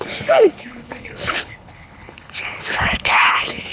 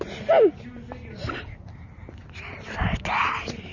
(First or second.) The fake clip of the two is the first